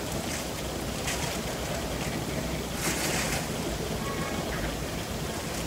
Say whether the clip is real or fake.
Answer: real